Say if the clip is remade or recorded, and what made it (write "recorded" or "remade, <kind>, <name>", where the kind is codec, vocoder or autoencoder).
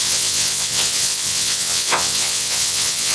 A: remade, vocoder, WaveNeXt